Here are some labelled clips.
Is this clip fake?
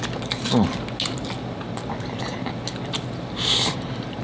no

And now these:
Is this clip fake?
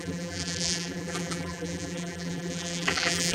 yes